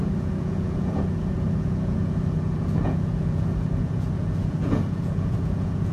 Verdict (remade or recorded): remade